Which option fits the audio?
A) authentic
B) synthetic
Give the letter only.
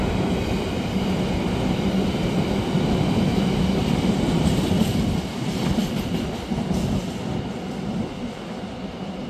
A